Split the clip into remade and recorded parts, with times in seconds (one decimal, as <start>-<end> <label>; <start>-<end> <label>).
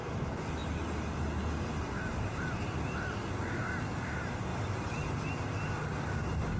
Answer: 0.0-6.6 recorded